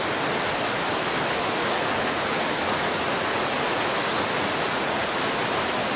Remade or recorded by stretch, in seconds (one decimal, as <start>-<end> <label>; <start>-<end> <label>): 0.0-1.6 recorded; 1.6-5.2 remade; 5.2-6.0 recorded